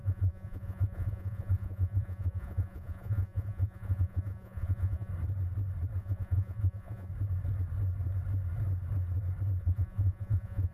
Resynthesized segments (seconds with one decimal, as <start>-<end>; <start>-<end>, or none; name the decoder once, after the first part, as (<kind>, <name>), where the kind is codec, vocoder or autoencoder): 0.0-5.1 (vocoder, Vocos); 6.0-7.1; 9.6-10.7